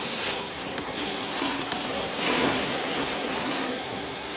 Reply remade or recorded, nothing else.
remade